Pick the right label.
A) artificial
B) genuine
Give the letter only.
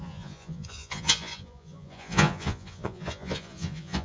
A